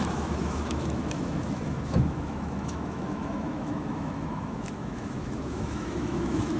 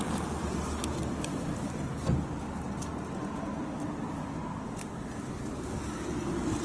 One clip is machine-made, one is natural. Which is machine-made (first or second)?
first